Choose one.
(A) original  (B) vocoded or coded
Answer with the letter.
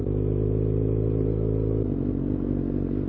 A